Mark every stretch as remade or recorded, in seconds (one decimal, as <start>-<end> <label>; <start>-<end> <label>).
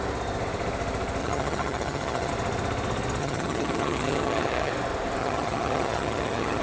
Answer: 0.0-1.2 recorded; 1.2-2.3 remade; 2.3-3.2 recorded; 3.2-4.7 remade; 4.7-5.2 recorded; 5.2-6.6 remade